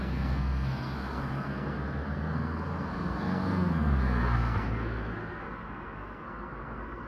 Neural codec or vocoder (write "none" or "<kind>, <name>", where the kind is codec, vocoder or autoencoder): codec, SNAC